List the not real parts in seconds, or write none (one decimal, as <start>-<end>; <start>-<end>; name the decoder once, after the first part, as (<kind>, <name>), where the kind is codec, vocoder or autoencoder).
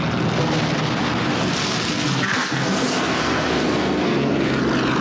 1.6-4.6 (codec, SNAC)